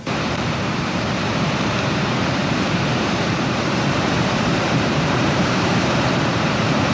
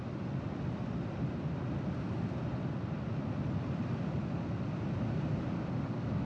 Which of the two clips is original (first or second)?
second